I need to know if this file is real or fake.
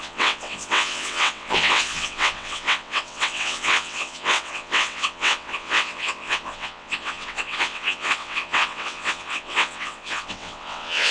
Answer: fake